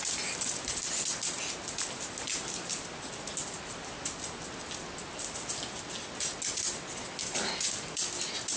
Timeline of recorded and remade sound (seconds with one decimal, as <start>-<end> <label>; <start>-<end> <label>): 0.0-8.6 recorded